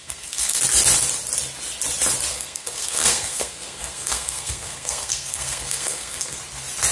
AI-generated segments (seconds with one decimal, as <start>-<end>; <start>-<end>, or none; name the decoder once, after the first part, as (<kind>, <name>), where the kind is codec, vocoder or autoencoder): 0.0-0.6 (codec, SNAC); 2.3-6.4